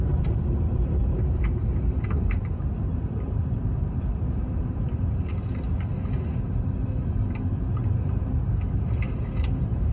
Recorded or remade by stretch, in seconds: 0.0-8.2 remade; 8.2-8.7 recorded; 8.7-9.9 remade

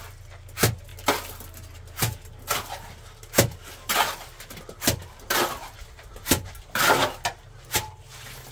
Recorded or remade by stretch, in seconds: 0.0-8.5 recorded